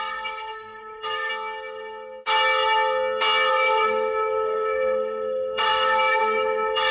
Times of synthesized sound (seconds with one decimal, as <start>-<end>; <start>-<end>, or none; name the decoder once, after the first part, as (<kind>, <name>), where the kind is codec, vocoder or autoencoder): 0.0-1.3 (codec, SNAC); 3.5-6.9